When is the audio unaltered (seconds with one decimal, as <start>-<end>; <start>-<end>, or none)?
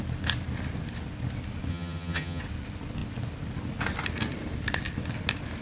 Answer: 0.0-1.7; 2.4-5.6